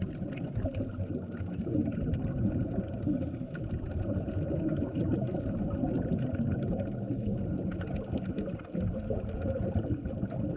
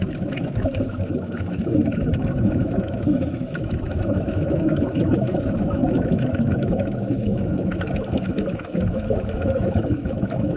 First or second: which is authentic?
first